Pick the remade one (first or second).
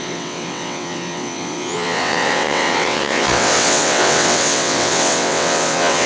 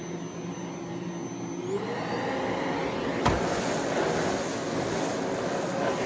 first